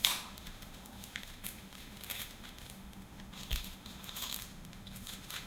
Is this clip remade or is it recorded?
remade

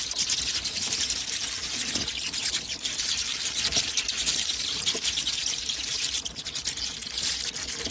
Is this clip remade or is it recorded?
remade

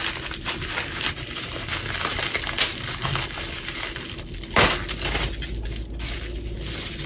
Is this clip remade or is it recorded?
recorded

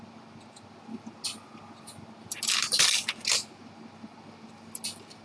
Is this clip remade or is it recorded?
recorded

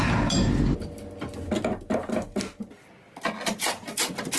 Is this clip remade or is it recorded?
recorded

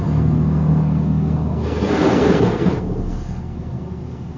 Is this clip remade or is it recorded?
remade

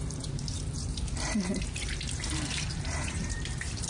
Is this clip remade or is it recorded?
remade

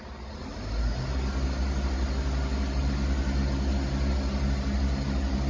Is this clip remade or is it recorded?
recorded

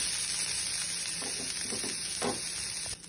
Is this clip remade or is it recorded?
recorded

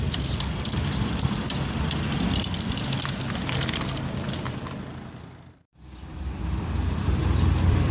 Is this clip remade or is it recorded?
remade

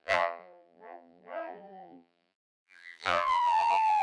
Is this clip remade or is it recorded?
remade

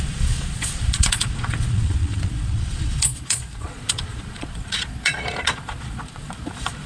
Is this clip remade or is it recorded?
remade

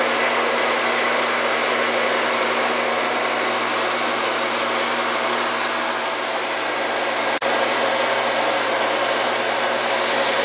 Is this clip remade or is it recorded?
recorded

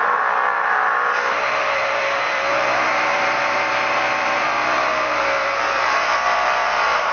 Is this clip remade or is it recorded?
remade